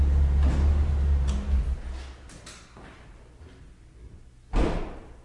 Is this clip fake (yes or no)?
no